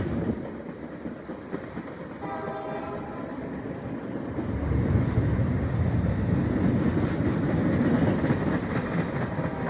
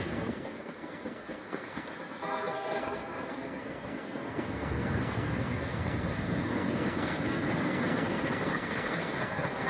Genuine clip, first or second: first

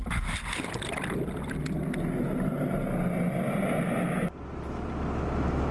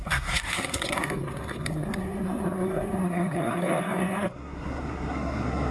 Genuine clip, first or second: first